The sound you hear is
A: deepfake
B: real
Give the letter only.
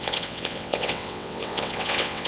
A